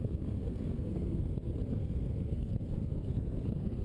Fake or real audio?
fake